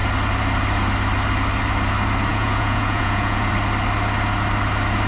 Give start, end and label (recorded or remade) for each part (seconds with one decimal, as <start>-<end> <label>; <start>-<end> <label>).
0.0-2.3 recorded; 2.3-3.5 remade; 3.5-5.1 recorded